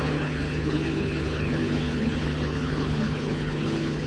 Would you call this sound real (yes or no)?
no